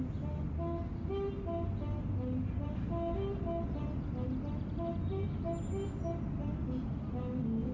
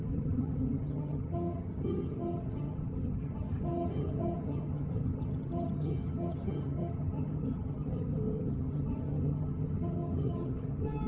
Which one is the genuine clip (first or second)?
first